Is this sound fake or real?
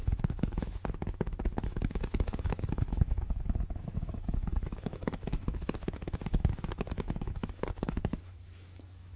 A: fake